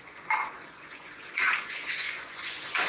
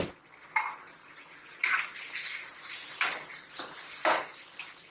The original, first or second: second